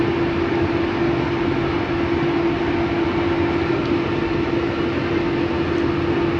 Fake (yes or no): no